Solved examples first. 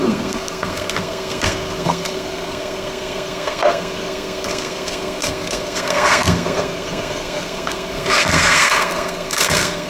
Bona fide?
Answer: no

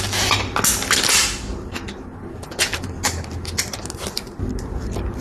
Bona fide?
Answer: yes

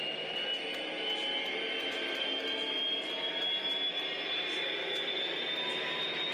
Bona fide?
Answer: yes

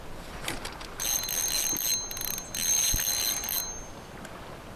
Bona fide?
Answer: yes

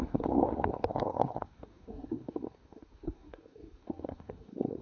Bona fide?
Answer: no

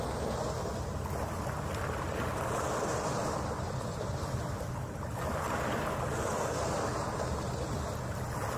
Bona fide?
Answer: yes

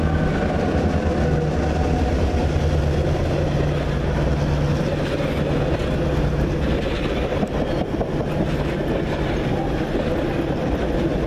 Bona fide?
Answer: yes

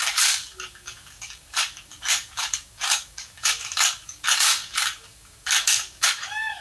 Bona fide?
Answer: no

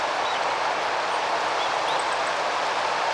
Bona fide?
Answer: yes